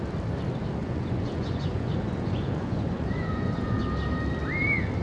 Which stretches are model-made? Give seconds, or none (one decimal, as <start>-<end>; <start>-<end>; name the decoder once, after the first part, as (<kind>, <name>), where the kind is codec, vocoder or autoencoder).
0.8-3.8 (vocoder, Vocos)

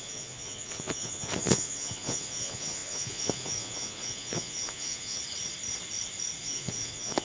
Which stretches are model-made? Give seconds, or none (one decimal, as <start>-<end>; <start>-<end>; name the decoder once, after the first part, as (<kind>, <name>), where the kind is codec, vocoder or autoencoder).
0.0-5.2 (vocoder, Vocos); 6.4-7.2

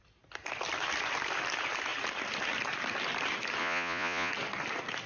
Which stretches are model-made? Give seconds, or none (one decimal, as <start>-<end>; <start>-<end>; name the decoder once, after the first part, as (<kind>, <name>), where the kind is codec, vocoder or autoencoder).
3.6-4.3 (vocoder, Vocos)

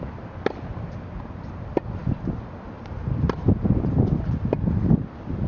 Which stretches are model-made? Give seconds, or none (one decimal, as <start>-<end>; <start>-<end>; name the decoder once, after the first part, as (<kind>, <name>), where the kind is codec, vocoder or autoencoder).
none